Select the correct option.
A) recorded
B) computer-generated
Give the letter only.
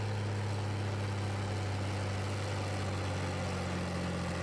A